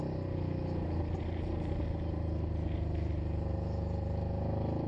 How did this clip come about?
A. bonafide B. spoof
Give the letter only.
A